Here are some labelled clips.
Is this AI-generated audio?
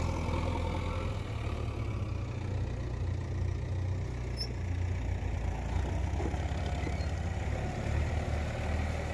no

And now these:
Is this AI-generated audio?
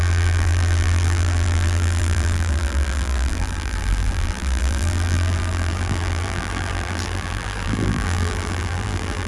yes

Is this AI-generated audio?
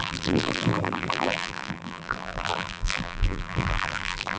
yes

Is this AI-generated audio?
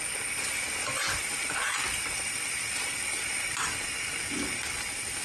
no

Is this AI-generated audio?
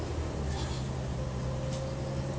no